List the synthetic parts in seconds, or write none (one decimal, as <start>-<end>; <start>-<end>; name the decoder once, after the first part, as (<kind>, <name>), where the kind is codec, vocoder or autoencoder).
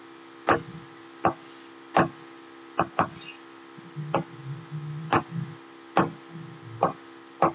none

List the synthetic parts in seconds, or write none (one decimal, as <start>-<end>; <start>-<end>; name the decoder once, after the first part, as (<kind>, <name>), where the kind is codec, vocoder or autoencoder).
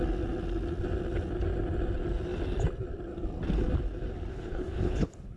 4.3-5.4 (codec, HILCodec)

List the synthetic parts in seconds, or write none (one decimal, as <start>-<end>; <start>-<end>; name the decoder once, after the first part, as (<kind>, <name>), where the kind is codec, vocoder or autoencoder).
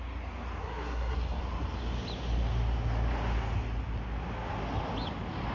0.6-1.4 (codec, SNAC)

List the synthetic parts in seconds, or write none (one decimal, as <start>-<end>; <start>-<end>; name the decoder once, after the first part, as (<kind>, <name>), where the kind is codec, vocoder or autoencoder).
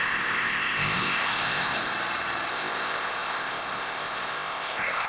0.0-1.9 (codec, ZipCodec); 2.5-5.1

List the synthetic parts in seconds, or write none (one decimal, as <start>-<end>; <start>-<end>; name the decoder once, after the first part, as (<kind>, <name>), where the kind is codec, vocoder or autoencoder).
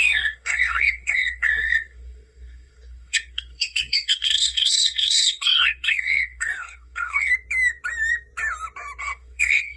0.0-7.3 (codec, SNAC); 9.0-9.8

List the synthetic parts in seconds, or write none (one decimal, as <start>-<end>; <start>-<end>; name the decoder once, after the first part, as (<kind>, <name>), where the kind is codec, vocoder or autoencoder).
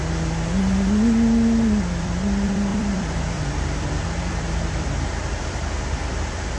2.0-6.6 (vocoder, BigVGAN v2)